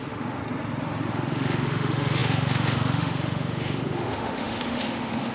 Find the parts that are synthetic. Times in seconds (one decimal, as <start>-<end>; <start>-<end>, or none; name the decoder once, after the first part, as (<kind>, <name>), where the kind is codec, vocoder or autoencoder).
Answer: 0.0-0.4 (autoencoder, DAC-VAE); 1.1-5.3